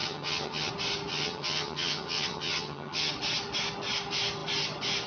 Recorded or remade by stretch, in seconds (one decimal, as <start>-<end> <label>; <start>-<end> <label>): 0.0-0.7 remade; 0.7-1.1 recorded; 1.1-3.1 remade; 3.1-5.1 recorded